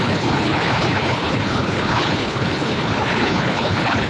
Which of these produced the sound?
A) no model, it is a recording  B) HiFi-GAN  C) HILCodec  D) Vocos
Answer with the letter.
C